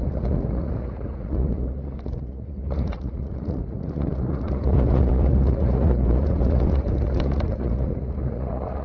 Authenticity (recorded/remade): remade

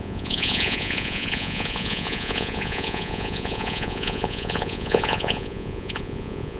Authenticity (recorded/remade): remade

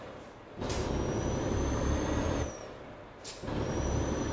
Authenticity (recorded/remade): remade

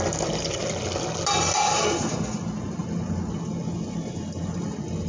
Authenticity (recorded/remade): recorded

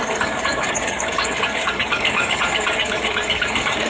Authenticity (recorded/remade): remade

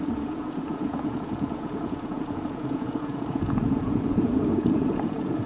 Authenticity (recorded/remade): remade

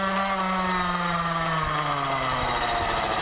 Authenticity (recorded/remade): recorded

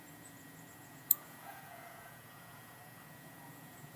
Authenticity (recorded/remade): remade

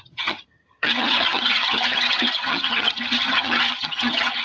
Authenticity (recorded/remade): remade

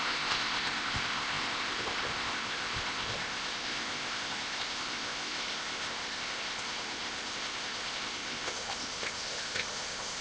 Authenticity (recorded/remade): remade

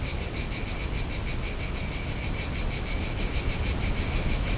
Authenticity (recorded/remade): recorded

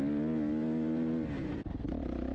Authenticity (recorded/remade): recorded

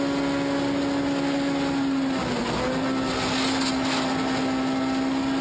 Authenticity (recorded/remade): recorded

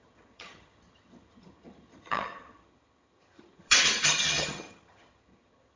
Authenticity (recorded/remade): remade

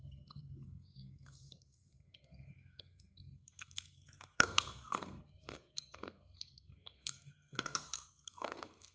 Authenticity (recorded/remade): remade